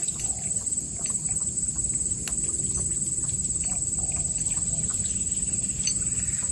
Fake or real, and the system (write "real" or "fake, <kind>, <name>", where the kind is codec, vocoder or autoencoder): real